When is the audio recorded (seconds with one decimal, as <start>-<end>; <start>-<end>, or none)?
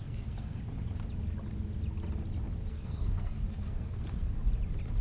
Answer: 0.6-2.7; 4.3-5.0